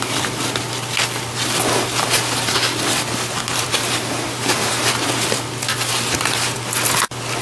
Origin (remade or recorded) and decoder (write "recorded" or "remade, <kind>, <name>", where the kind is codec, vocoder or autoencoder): recorded